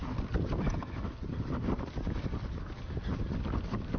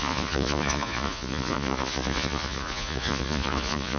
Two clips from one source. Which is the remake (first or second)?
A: second